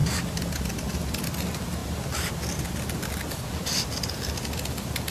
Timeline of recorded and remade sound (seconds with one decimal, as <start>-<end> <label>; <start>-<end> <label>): 0.0-5.1 recorded